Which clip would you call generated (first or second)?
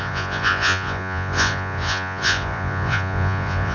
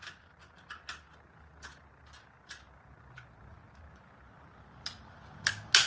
first